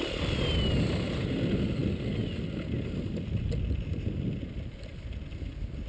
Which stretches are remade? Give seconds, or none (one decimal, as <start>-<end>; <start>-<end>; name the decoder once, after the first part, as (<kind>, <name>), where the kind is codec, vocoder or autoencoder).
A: none